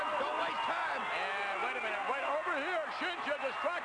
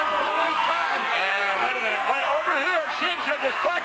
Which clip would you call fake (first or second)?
second